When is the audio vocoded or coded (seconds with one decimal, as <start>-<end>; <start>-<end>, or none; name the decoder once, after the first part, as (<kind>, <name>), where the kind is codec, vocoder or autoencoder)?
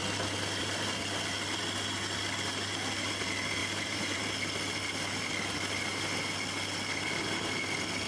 3.6-4.3 (vocoder, BigVGAN v2)